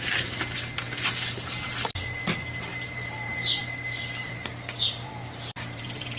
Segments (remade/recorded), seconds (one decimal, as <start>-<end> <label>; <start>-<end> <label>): 0.0-2.7 recorded; 2.7-3.6 remade; 3.6-4.2 recorded; 4.2-6.2 remade